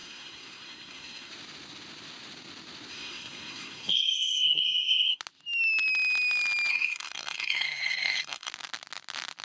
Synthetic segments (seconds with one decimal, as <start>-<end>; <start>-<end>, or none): 0.0-1.3; 2.9-5.2; 6.7-8.5